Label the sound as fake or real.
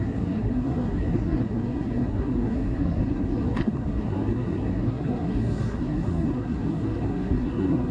fake